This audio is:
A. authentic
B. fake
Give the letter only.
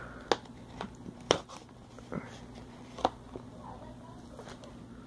A